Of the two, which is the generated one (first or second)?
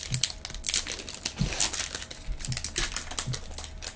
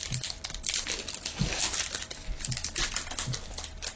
second